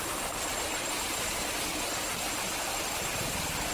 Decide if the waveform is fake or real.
real